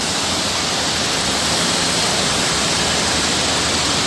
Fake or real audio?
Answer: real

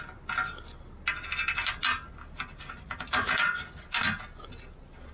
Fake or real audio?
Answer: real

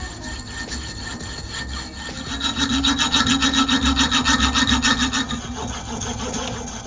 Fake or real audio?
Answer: real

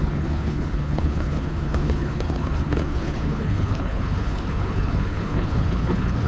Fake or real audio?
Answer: fake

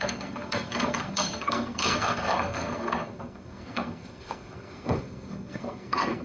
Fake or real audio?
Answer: fake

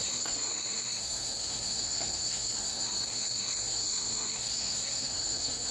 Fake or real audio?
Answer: fake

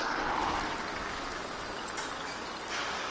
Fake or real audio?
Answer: real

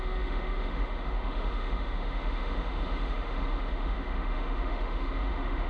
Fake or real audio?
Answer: fake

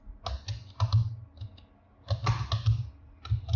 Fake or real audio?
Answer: real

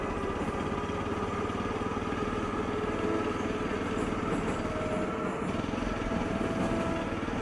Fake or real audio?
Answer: real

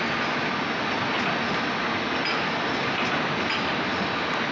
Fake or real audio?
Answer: real